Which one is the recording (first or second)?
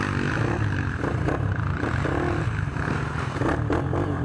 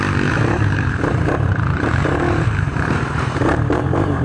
first